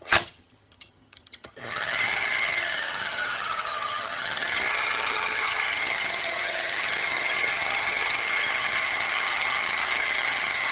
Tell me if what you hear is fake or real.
fake